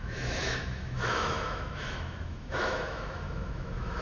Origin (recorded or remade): remade